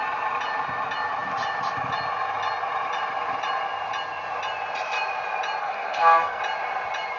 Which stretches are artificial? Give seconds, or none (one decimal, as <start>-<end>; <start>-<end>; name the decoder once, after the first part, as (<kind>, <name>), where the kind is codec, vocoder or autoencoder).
5.6-6.4 (codec, SNAC)